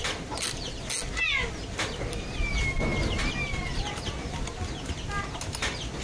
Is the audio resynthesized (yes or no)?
no